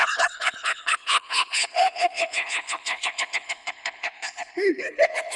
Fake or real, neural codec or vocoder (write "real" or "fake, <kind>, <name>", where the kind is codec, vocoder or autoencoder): fake, codec, HILCodec